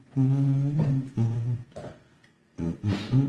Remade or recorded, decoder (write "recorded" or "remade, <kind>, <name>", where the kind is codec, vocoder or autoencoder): remade, vocoder, Vocos